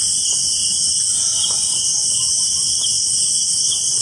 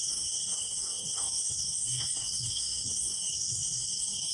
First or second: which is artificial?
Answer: second